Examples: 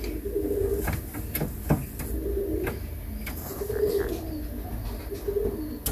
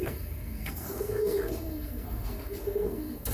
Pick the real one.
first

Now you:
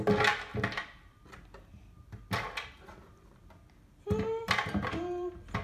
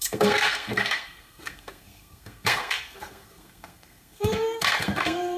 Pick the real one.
first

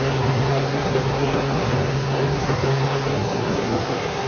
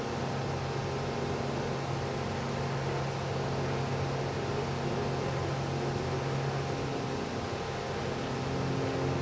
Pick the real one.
second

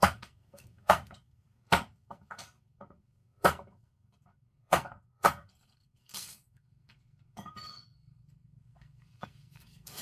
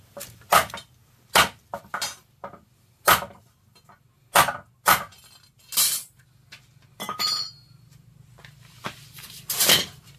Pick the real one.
second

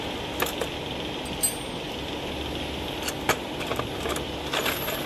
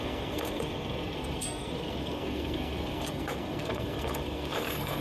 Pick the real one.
first